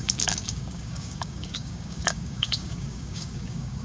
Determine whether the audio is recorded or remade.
remade